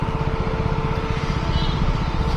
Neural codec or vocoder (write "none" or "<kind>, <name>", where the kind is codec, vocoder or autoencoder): none